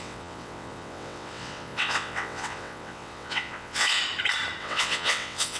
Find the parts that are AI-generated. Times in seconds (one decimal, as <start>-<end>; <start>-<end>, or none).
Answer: 0.0-4.0; 4.6-5.6